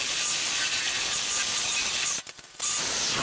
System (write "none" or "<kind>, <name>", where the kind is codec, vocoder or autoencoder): none